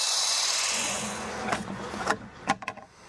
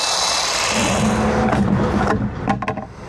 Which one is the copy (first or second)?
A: first